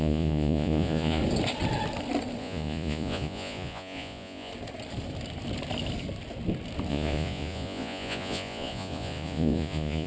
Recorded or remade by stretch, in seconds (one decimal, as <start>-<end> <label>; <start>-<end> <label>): 0.0-1.2 remade; 1.2-2.4 recorded; 2.4-4.5 remade; 4.5-6.9 recorded; 6.9-10.1 remade